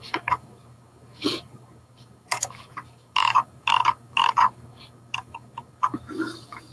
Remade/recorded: remade